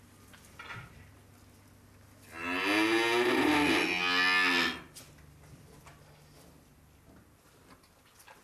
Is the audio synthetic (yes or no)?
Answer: no